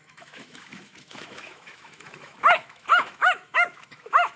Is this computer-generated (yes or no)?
yes